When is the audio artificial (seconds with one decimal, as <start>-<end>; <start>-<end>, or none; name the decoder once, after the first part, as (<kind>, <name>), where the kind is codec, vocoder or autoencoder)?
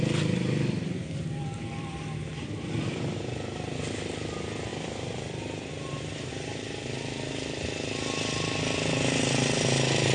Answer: 4.7-6.3 (vocoder, BigVGAN v2)